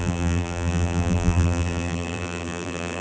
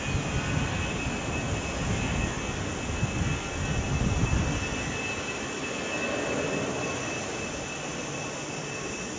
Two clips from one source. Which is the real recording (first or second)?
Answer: second